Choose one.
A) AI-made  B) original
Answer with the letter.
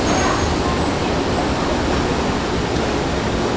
B